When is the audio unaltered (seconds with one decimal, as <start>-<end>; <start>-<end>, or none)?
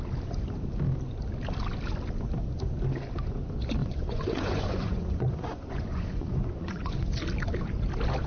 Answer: 0.0-3.8; 7.1-8.3